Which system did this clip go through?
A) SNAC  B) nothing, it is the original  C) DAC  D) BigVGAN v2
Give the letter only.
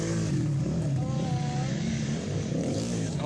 C